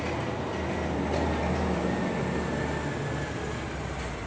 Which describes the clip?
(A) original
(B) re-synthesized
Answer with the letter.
A